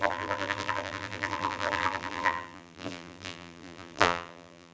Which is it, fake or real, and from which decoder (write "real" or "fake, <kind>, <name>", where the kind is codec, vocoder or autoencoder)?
fake, vocoder, BigVGAN v2